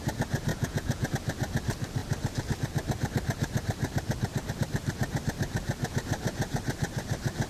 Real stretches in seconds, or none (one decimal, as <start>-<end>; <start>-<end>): 0.0-0.5; 1.1-7.5